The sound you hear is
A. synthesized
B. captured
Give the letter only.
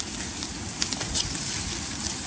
B